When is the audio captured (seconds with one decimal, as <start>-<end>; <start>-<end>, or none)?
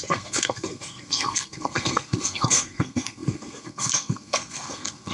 none